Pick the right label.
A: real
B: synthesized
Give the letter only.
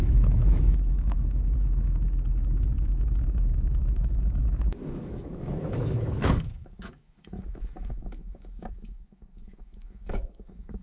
B